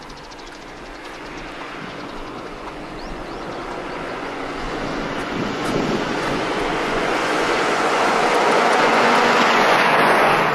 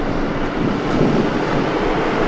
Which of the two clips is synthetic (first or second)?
first